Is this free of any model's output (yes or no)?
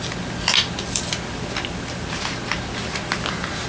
yes